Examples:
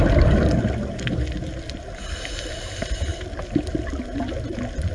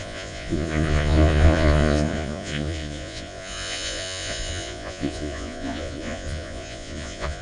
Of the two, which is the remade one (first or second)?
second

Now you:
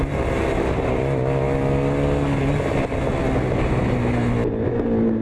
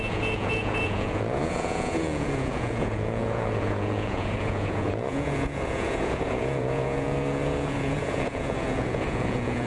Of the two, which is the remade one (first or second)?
second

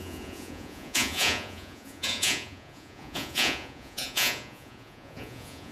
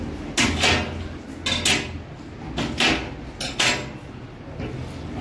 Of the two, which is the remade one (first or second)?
first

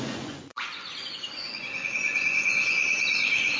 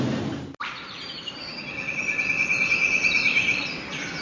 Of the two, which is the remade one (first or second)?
first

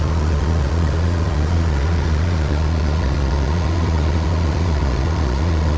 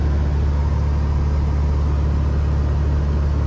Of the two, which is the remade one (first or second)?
first